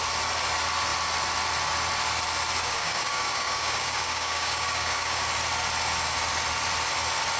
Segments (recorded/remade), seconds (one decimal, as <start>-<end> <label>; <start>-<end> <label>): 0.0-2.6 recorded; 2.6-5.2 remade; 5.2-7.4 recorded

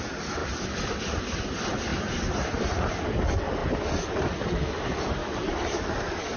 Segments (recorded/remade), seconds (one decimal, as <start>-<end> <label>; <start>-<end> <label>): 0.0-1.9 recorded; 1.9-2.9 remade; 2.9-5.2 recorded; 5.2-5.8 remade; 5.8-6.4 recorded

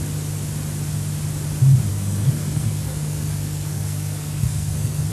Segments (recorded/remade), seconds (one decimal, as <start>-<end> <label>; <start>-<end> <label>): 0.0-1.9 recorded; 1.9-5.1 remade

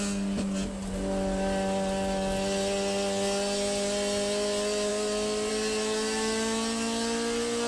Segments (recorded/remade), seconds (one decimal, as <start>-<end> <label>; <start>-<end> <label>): 0.0-7.7 recorded

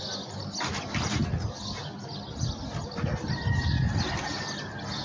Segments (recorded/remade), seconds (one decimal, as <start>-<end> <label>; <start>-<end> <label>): 0.0-5.0 recorded

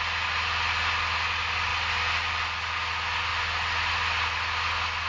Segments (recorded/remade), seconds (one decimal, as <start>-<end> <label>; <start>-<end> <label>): 0.0-5.1 recorded

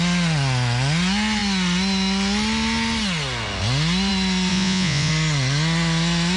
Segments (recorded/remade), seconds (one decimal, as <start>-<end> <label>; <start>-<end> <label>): 0.0-4.5 recorded; 4.5-5.1 remade; 5.1-6.4 recorded

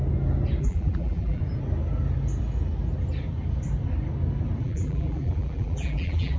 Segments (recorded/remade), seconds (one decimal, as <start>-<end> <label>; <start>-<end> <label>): 0.0-0.6 recorded; 0.6-1.4 remade; 1.4-4.6 recorded; 4.6-6.4 remade